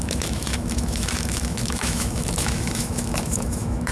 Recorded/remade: remade